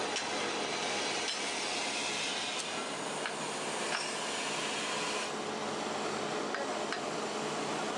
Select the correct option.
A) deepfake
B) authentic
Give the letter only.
B